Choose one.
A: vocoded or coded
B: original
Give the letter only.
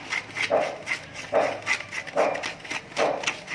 B